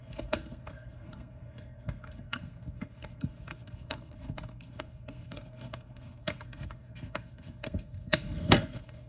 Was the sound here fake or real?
fake